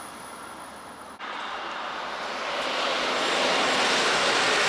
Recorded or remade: recorded